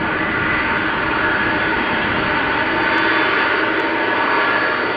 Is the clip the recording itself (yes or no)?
yes